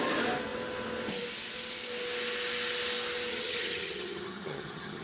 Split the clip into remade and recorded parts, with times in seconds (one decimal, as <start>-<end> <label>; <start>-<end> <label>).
0.0-3.3 recorded; 3.3-5.0 remade